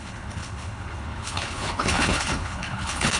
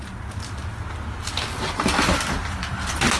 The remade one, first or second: first